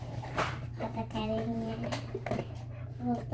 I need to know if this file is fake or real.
fake